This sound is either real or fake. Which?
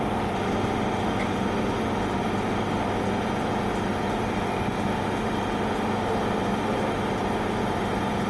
real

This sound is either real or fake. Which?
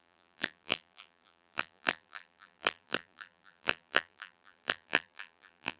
fake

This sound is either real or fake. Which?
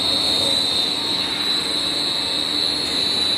real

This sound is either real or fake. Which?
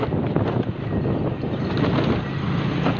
real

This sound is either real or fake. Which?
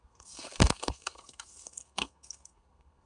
fake